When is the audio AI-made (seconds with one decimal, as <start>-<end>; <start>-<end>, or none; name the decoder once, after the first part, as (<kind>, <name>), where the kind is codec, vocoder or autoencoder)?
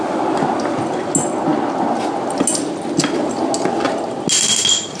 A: none